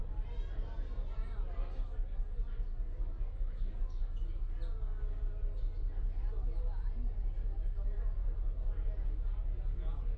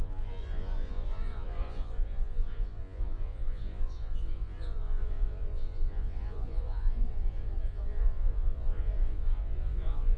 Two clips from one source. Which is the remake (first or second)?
second